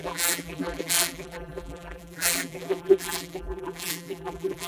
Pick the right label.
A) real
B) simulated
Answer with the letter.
B